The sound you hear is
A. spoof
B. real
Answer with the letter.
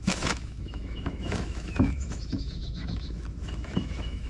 A